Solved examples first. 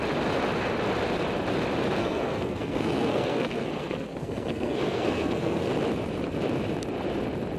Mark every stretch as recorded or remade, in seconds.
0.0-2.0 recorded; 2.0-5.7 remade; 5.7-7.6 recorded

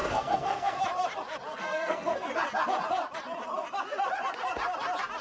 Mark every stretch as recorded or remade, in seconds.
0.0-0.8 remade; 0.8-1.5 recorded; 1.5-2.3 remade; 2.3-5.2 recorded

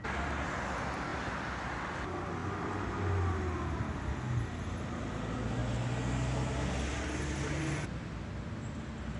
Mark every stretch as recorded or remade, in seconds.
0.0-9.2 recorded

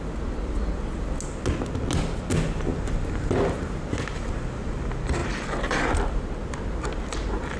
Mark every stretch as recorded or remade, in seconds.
0.0-5.2 recorded; 5.2-6.2 remade; 6.2-7.6 recorded

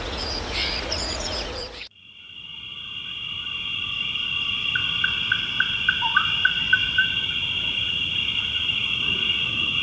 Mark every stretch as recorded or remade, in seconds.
0.0-2.5 remade; 2.5-7.7 recorded; 7.7-9.8 remade

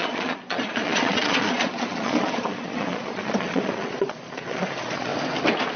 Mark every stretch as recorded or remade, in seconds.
0.0-5.1 remade; 5.1-5.8 recorded